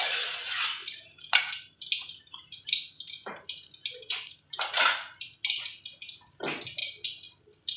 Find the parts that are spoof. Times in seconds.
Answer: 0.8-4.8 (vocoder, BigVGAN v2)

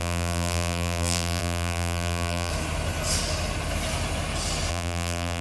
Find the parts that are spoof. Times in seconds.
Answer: 0.0-2.5 (vocoder, BigVGAN v2); 4.7-5.4

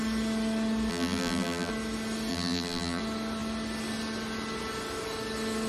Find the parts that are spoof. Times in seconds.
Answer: 0.9-1.7 (vocoder, BigVGAN v2); 2.3-3.0